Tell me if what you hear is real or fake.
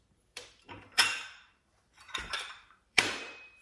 fake